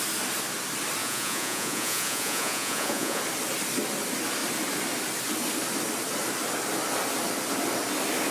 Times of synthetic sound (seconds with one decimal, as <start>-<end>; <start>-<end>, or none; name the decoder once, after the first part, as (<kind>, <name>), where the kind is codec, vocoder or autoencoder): 1.0-3.2 (vocoder, Vocos)